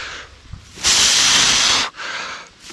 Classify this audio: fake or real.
real